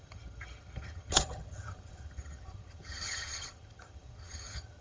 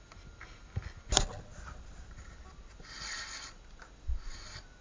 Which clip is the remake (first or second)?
first